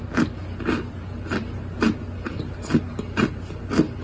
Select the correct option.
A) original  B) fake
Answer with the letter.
A